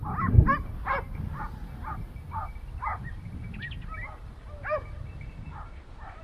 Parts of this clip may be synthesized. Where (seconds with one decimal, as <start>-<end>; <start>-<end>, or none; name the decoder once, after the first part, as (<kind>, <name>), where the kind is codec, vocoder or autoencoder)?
none